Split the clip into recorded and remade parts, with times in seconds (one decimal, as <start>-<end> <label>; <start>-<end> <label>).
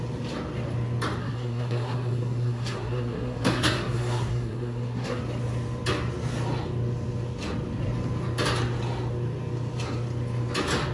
0.0-1.2 recorded; 1.2-5.2 remade; 5.2-10.9 recorded